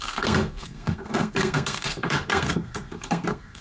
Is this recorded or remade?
remade